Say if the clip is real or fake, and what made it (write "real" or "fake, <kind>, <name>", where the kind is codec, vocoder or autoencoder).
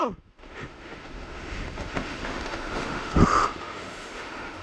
fake, autoencoder, DAC-VAE